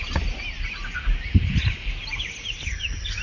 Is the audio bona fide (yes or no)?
yes